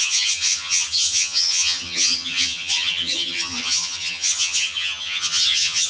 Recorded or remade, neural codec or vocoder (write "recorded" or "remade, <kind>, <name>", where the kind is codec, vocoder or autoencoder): remade, vocoder, HiFi-GAN